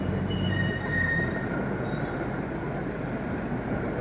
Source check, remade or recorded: recorded